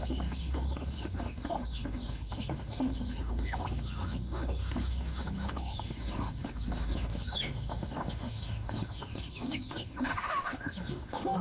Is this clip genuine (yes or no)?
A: no